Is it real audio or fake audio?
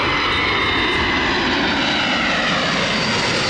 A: real